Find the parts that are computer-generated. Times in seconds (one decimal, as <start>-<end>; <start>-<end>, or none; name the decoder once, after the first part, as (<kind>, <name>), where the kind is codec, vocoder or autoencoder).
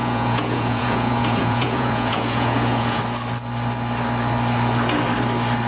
0.0-3.0 (vocoder, Vocos)